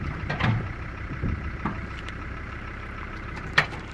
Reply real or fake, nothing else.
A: fake